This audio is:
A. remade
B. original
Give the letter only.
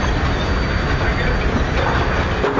B